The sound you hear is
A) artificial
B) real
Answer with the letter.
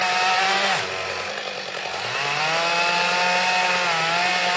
B